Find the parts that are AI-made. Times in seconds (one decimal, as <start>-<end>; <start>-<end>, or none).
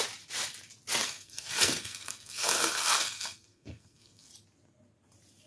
1.0-4.3